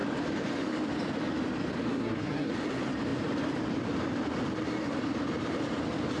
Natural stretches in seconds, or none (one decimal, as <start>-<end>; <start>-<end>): 0.0-1.9; 2.5-6.2